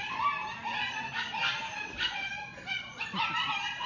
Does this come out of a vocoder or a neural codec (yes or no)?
no